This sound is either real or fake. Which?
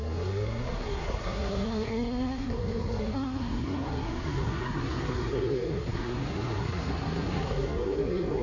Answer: fake